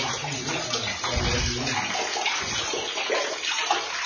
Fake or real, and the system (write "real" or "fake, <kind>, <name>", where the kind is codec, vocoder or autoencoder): real